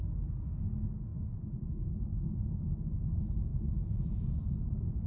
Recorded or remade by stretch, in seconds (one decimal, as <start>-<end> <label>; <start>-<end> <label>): 0.0-3.5 remade; 3.5-4.3 recorded; 4.3-5.1 remade